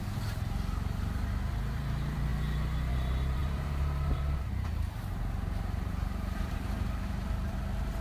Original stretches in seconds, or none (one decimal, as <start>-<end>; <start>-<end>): 2.3-2.9